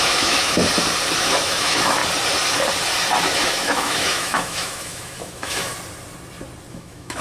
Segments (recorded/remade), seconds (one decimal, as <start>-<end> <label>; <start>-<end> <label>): 0.0-0.6 remade; 0.6-1.2 recorded; 1.2-2.0 remade; 2.0-3.2 recorded; 3.2-5.7 remade; 5.7-6.7 recorded; 6.7-7.2 remade